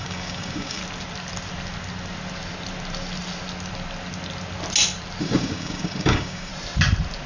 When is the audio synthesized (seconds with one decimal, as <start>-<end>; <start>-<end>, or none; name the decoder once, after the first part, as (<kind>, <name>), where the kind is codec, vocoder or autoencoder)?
0.0-0.8 (codec, DAC); 5.2-6.5